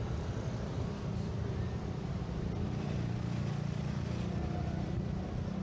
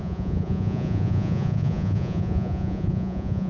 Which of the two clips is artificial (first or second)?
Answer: second